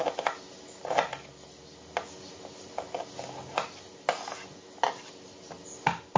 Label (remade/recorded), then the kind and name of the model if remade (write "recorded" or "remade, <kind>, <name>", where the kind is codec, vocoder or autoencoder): recorded